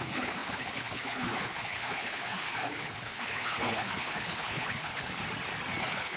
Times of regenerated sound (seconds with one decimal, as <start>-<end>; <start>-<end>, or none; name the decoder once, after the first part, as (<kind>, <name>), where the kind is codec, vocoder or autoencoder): 0.0-5.1 (codec, HILCodec); 5.8-6.2